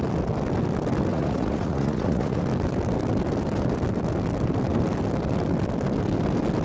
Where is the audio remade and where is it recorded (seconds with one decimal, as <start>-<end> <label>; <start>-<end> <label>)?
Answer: 0.0-1.1 recorded; 1.1-2.4 remade; 2.4-6.6 recorded